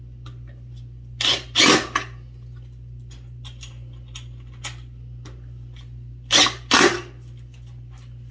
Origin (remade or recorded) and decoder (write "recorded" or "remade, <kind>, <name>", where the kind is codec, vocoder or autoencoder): recorded